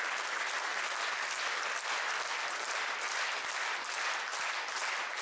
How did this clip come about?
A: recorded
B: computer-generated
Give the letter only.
A